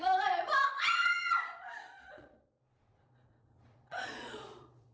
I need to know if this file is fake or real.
fake